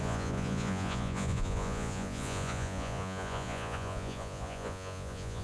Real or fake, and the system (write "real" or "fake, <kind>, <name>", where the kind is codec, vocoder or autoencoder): fake, vocoder, Vocos